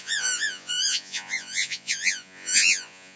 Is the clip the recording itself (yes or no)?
no